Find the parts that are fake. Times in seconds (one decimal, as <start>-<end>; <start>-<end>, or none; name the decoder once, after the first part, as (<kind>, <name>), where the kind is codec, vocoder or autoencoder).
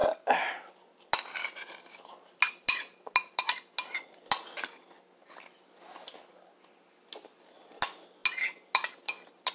none